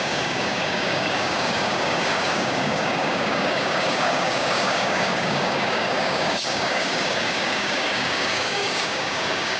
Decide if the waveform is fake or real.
fake